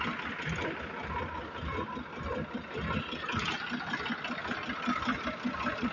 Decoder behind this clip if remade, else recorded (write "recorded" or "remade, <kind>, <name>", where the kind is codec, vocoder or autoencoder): recorded